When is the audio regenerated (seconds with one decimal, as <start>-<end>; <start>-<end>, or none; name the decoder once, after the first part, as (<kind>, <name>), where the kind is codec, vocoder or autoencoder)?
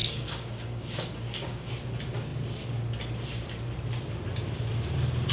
0.0-1.7 (codec, DAC)